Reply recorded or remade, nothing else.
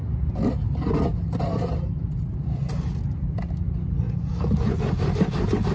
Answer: recorded